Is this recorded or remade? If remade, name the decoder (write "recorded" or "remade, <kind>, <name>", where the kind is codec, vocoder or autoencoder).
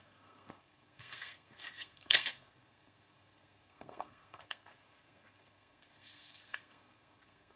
remade, codec, SNAC